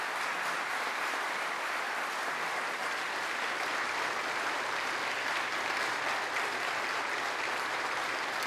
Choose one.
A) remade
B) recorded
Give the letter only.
A